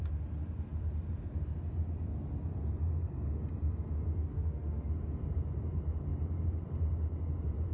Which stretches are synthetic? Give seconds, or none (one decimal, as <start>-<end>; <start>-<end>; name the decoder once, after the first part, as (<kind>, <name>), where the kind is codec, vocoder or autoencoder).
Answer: 4.2-4.9 (autoencoder, DAC-VAE)